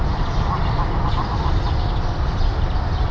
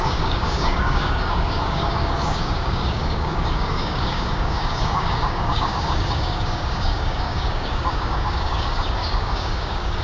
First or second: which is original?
first